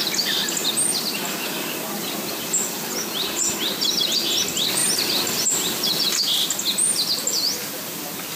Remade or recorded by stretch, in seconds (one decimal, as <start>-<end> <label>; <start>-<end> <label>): 0.0-8.4 recorded